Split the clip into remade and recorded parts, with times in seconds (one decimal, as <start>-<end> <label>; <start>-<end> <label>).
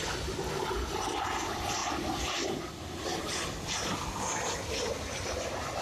0.0-1.8 recorded; 1.8-4.2 remade; 4.2-5.8 recorded